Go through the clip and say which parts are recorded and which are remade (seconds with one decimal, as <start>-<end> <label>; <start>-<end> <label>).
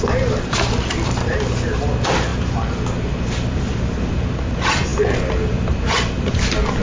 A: 0.0-6.8 recorded